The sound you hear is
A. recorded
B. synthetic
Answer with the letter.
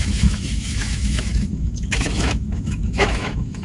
B